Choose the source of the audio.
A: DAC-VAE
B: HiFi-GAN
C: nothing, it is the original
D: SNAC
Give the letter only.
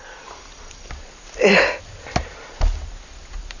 C